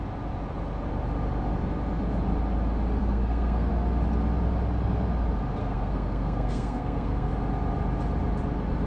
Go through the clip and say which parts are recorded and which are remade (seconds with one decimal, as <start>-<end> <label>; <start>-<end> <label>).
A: 0.0-3.0 recorded; 3.0-3.7 remade; 3.7-5.6 recorded; 5.6-7.3 remade; 7.3-8.9 recorded